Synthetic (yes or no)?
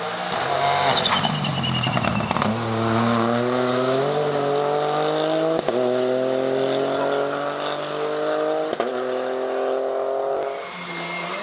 no